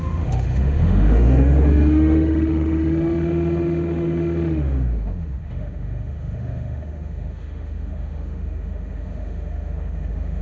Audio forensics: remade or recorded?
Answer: remade